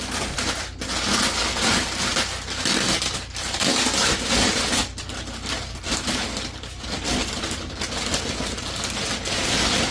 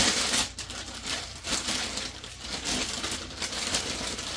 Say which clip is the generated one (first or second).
second